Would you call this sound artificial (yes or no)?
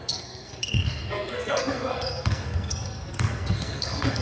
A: yes